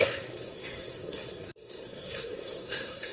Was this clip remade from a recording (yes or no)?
yes